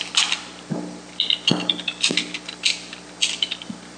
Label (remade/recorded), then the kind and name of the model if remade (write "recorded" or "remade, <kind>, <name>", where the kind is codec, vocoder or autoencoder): recorded